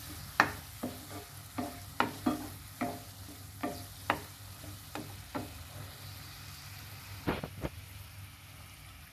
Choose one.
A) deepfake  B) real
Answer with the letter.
B